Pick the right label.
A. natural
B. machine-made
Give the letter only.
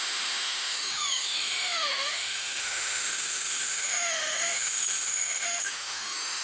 B